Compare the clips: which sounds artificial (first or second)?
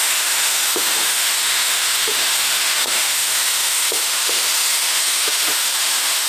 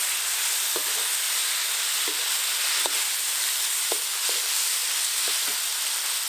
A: first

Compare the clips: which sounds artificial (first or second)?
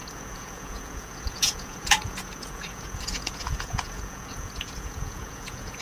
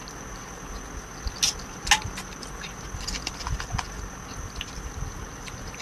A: first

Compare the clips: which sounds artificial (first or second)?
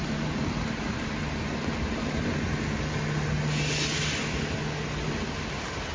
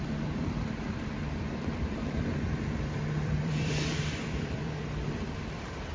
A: second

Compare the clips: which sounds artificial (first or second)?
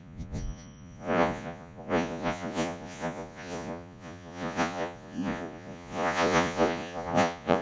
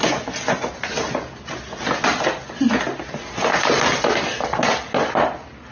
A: first